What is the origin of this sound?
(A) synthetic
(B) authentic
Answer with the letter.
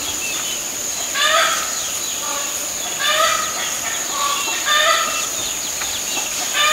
B